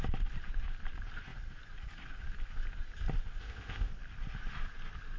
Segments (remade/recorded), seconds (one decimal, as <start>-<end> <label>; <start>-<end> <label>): 0.0-3.4 recorded; 3.4-3.9 remade; 3.9-5.2 recorded

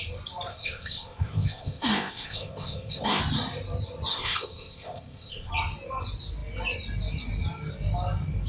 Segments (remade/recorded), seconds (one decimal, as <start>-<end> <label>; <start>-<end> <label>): 0.0-0.5 recorded; 0.5-3.2 remade; 3.2-4.1 recorded; 4.1-5.5 remade; 5.5-8.5 recorded

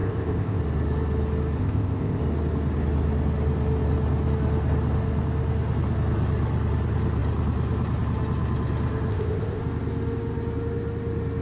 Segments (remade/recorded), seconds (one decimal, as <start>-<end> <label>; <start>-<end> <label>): 0.0-0.6 remade; 0.6-1.6 recorded; 1.6-2.2 remade; 2.2-9.1 recorded; 9.1-9.6 remade; 9.6-11.4 recorded

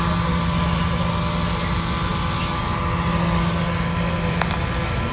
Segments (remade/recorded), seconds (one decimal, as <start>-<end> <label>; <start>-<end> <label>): 0.0-5.1 recorded

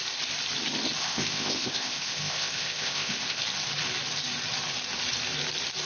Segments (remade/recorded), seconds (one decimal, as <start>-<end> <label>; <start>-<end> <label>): 0.0-1.0 recorded; 1.0-3.4 remade; 3.4-5.9 recorded